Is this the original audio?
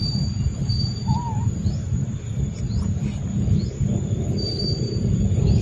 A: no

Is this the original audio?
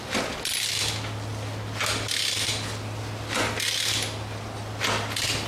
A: yes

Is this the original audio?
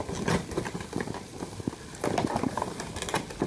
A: yes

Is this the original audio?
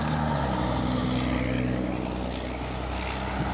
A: yes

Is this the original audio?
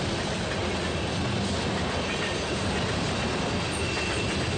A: yes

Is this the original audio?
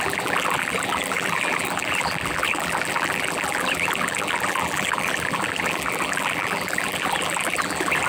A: no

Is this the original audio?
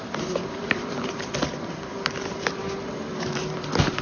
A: no